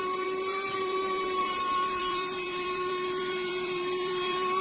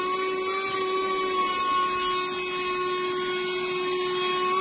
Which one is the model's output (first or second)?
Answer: first